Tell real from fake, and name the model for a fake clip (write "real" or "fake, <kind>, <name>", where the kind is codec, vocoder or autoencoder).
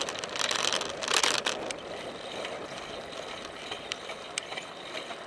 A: real